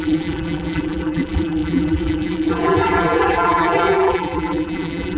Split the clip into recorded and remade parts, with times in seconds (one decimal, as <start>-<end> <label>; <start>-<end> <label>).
0.0-5.2 remade